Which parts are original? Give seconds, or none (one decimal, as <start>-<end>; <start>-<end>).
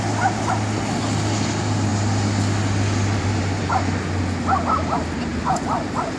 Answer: 0.0-5.3